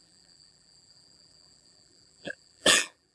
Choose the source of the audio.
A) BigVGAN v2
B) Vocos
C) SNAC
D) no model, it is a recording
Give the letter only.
A